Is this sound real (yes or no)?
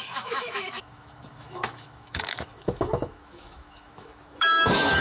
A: no